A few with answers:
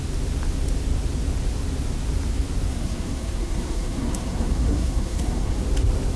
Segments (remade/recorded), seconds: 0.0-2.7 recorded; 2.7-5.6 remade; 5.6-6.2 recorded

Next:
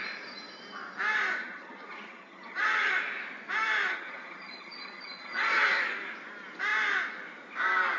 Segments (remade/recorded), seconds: 0.0-1.4 recorded; 1.4-2.9 remade; 2.9-3.9 recorded; 3.9-5.8 remade; 5.8-8.0 recorded

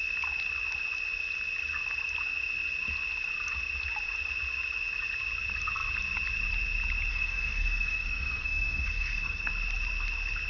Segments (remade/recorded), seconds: 0.0-7.1 recorded; 7.1-9.5 remade; 9.5-10.5 recorded

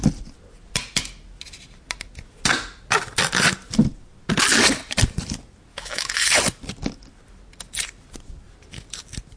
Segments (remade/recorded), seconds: 0.0-5.7 recorded; 5.7-6.3 remade; 6.3-9.4 recorded

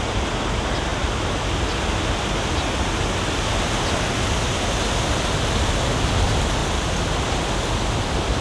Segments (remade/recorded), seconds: 0.0-8.4 recorded

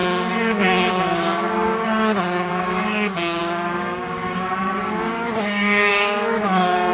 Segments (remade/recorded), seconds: 0.0-0.9 recorded; 0.9-1.7 remade; 1.7-2.5 recorded; 2.5-6.9 remade

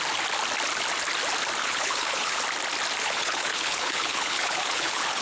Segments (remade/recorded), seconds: 0.0-1.6 recorded; 1.6-2.4 remade; 2.4-3.0 recorded; 3.0-5.2 remade

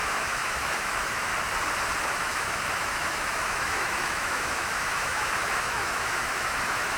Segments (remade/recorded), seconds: 0.0-1.3 remade; 1.3-2.0 recorded; 2.0-7.0 remade